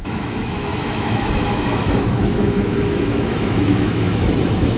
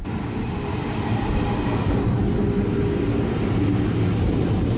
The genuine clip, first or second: second